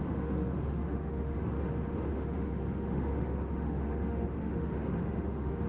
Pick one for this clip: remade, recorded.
remade